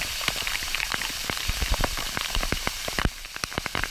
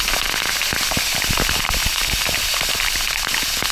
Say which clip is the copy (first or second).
first